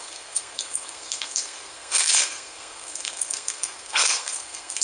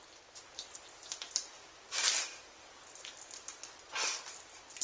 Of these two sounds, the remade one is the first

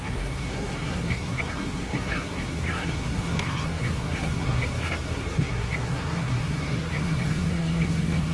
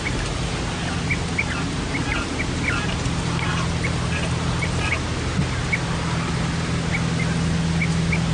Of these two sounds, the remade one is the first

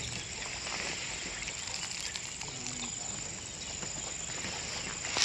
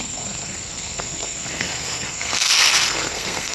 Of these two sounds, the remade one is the second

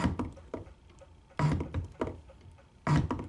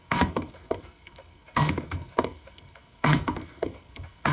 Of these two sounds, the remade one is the second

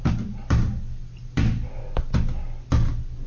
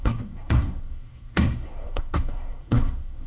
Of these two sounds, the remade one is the second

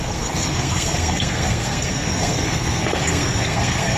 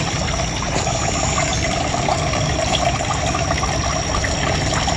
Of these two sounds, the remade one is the first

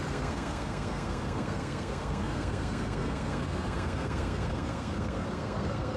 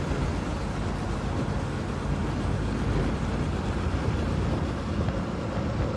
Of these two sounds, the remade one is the first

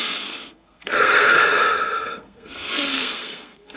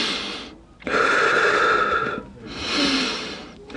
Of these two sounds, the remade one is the first